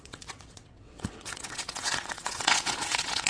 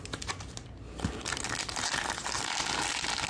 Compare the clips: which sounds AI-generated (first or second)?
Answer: first